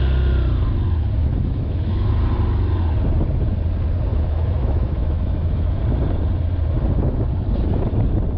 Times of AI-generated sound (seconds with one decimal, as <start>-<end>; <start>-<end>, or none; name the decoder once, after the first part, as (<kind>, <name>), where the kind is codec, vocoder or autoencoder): 1.3-2.1 (autoencoder, DAC-VAE); 4.1-5.8